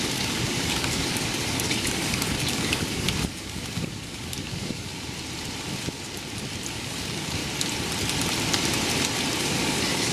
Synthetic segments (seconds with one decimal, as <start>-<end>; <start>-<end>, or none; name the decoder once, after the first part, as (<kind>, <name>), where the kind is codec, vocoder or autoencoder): 0.0-4.9 (codec, DAC); 6.7-7.4; 9.4-10.1